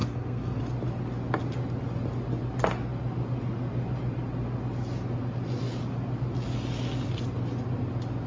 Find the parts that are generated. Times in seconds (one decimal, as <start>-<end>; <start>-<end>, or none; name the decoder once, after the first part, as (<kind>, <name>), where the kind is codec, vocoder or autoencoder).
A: 0.0-0.6 (codec, SNAC)